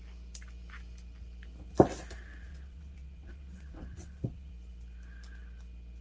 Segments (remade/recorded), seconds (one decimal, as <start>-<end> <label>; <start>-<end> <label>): 0.0-2.5 recorded; 2.5-4.5 remade; 4.5-6.0 recorded

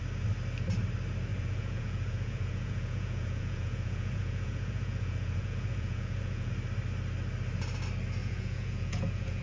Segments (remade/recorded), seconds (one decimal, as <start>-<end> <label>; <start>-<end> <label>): 0.0-1.3 recorded; 1.3-6.5 remade; 6.5-8.2 recorded; 8.2-9.4 remade

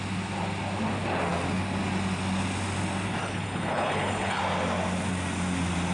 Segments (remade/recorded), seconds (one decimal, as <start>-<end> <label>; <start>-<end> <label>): 0.0-3.2 recorded; 3.2-4.4 remade; 4.4-5.9 recorded

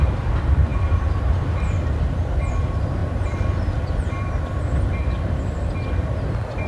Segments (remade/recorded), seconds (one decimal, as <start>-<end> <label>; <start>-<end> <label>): 0.0-6.7 remade

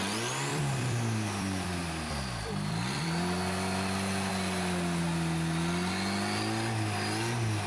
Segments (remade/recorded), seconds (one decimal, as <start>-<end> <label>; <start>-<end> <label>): 0.0-0.5 recorded; 0.5-4.3 remade; 4.3-7.7 recorded

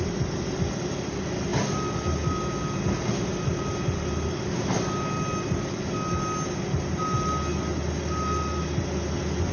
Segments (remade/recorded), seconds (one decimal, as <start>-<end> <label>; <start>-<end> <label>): 0.0-9.5 recorded

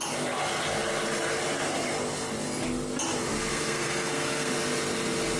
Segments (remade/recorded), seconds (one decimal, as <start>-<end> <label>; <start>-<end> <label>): 0.0-3.5 recorded; 3.5-4.5 remade; 4.5-5.4 recorded

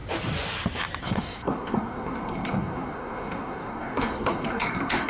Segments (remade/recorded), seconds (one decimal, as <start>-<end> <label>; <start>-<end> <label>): 0.0-1.0 recorded; 1.0-5.1 remade